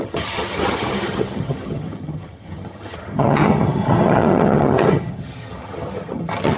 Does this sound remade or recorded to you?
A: remade